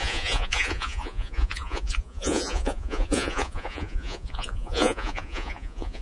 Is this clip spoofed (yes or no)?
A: yes